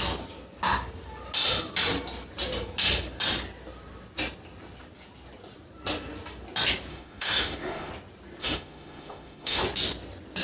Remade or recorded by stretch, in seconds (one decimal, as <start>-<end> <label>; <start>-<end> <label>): 0.0-6.9 recorded; 6.9-7.9 remade; 7.9-8.4 recorded; 8.4-9.6 remade; 9.6-10.4 recorded